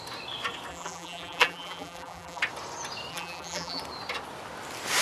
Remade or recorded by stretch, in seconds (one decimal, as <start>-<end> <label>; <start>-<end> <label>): 0.0-0.7 recorded; 0.7-2.4 remade; 2.4-3.1 recorded; 3.1-3.8 remade; 3.8-5.0 recorded